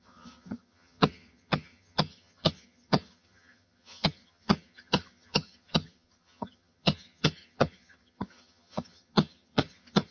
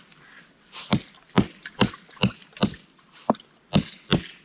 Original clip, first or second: second